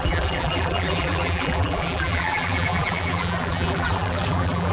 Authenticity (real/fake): fake